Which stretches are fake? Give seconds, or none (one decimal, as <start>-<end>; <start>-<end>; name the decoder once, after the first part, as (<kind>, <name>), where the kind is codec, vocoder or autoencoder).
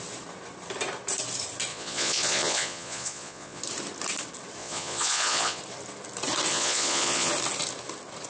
1.7-3.6 (vocoder, Vocos); 4.6-5.6; 6.5-7.3